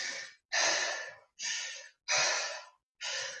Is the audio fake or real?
real